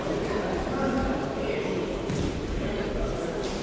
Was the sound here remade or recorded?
recorded